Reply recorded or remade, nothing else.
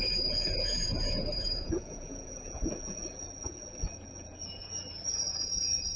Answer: remade